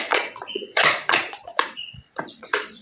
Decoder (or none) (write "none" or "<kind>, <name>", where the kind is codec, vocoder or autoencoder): vocoder, Vocos